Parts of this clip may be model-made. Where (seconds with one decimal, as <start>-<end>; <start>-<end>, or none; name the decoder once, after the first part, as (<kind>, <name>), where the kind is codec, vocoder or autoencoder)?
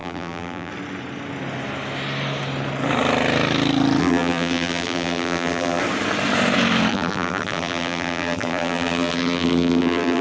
0.0-0.7 (vocoder, BigVGAN v2); 4.0-5.8; 6.9-10.2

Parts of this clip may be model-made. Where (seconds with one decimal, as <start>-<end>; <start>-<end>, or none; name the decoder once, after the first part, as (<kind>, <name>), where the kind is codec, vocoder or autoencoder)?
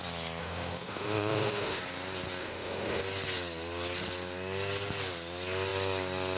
0.4-1.8 (autoencoder, DAC-VAE); 2.4-3.0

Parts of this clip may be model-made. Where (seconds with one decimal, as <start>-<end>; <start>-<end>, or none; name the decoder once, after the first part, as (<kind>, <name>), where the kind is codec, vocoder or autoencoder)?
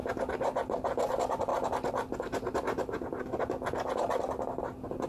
none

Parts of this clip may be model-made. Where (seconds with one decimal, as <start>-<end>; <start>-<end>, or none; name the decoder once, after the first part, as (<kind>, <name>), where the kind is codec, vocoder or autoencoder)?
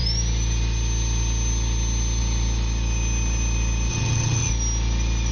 3.9-4.5 (vocoder, HiFi-GAN)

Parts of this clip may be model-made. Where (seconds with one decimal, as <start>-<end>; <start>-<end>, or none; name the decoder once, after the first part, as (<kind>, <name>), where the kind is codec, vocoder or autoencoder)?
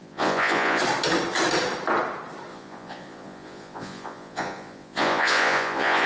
0.0-0.8 (vocoder, Vocos); 2.5-6.1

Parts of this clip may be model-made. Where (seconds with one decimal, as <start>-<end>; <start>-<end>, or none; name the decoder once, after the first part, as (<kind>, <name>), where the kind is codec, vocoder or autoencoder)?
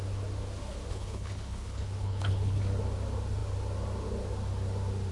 0.9-2.6 (codec, HILCodec)